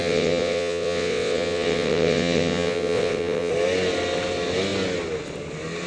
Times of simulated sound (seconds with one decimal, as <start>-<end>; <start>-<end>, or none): 0.0-3.5